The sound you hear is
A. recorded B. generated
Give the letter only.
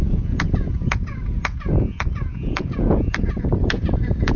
B